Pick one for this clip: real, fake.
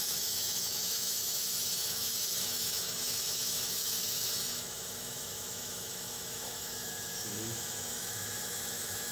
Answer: fake